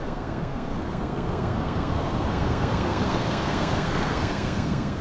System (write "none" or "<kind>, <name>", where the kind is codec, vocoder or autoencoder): codec, SNAC